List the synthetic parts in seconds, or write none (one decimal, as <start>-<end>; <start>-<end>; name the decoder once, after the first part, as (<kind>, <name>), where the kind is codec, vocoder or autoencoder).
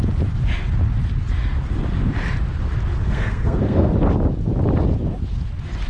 3.0-3.9 (codec, SNAC)